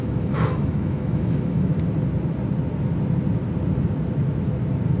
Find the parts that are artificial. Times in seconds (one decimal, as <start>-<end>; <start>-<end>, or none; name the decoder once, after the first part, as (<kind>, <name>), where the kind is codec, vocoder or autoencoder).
0.0-1.7 (autoencoder, DAC-VAE)